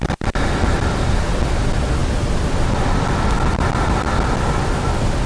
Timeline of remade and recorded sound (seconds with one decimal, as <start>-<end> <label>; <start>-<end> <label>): 0.0-5.3 recorded